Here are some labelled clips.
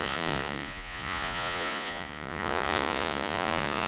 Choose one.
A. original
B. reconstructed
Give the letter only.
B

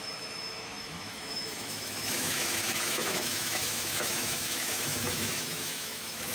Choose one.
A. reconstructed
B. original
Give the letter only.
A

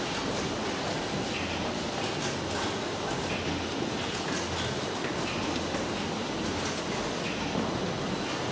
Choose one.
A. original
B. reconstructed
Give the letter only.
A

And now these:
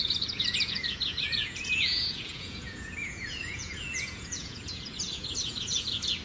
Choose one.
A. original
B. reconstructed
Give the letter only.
B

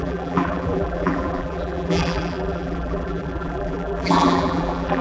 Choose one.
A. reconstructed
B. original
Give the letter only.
A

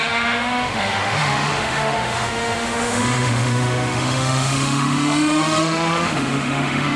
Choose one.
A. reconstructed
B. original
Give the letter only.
A